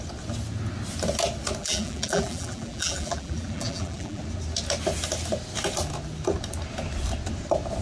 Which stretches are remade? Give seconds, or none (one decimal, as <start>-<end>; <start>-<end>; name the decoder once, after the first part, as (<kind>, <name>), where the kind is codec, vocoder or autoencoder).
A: 1.6-4.2 (vocoder, BigVGAN v2)